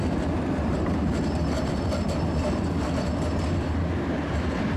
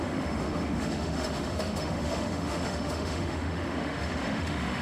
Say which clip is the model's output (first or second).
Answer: second